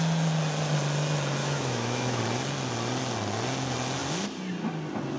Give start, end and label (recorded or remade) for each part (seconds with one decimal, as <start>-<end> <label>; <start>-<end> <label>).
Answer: 0.0-1.4 recorded; 1.4-2.2 remade; 2.2-5.2 recorded